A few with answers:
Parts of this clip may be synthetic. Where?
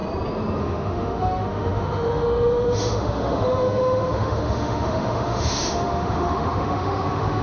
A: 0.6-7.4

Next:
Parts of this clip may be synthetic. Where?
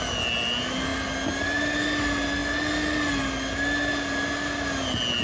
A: none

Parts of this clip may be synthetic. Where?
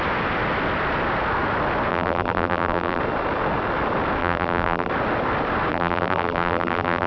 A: 1.9-3.0; 4.2-4.9; 5.7-7.1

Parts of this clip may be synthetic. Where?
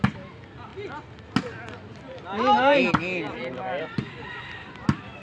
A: none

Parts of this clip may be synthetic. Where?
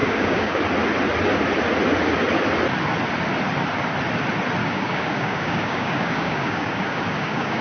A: 0.0-0.6; 4.6-7.6